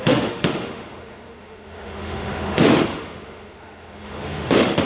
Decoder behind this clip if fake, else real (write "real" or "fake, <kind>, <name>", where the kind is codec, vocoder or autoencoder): fake, autoencoder, DAC-VAE